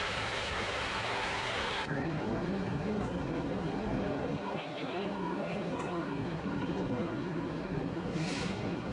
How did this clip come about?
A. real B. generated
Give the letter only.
B